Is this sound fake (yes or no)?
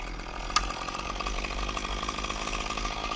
no